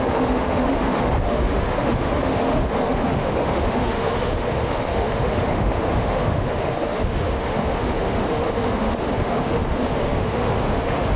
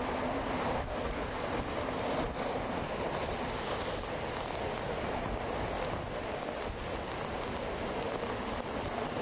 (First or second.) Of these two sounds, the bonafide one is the second